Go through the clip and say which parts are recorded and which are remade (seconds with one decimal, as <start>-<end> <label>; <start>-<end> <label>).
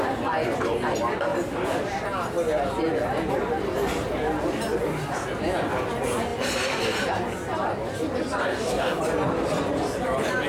0.0-8.4 recorded; 8.4-9.0 remade; 9.0-10.5 recorded